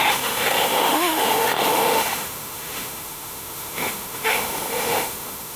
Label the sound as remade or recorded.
remade